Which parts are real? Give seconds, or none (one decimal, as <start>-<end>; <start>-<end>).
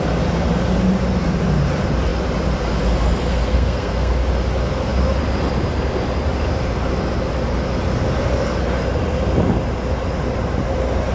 0.0-3.3; 4.1-11.1